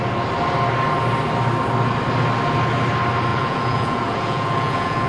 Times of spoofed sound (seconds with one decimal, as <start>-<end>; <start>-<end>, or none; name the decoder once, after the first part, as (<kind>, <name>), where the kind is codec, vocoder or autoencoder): 3.3-5.1 (vocoder, Vocos)